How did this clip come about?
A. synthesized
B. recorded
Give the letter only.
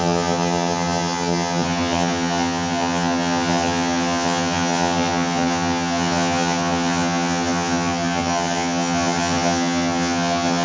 A